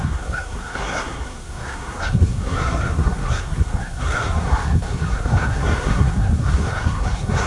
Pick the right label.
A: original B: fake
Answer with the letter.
B